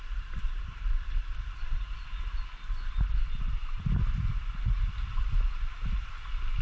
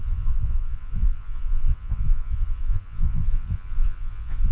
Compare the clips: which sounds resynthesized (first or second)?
second